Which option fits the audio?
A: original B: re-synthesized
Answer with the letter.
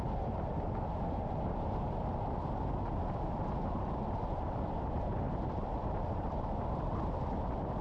A